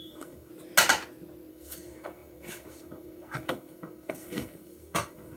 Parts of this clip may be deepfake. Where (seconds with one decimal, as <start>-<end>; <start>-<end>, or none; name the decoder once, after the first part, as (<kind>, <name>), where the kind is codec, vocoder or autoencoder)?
0.0-0.5 (codec, SNAC); 1.5-5.4